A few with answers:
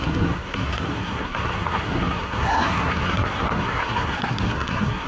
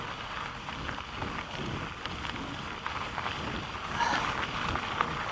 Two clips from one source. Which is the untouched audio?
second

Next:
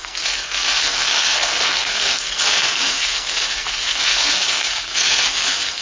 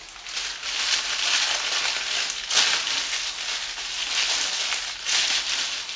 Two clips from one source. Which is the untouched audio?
second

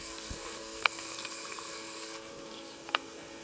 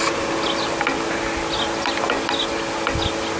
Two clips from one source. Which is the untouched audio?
second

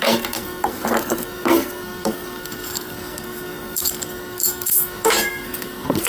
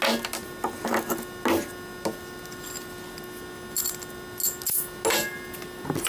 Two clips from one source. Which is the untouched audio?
second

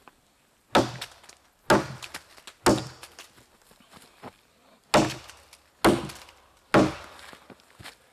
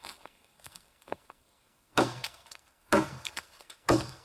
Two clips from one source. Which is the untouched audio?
first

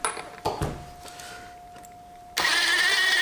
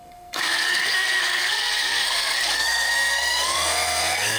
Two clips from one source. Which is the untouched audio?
first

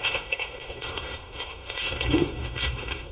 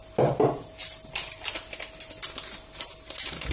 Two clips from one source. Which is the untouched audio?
second